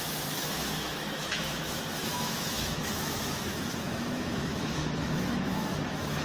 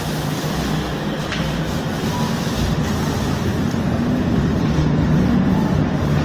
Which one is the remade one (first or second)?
first